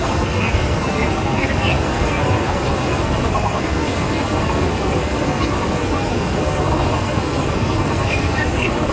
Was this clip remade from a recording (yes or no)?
yes